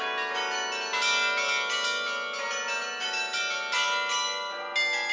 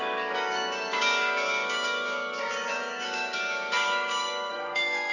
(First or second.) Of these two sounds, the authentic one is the first